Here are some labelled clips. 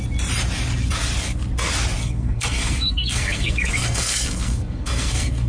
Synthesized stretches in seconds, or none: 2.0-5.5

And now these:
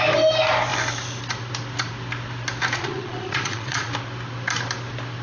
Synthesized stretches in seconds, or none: 2.8-3.9